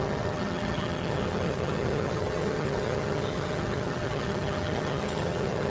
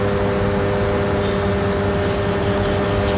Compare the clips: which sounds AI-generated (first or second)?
first